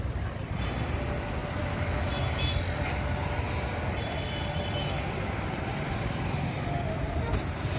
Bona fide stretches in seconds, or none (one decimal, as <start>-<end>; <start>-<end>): 0.0-7.8